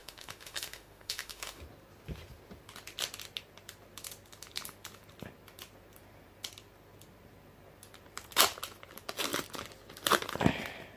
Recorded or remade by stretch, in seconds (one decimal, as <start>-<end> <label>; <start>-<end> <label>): 0.0-1.6 remade; 1.6-11.0 recorded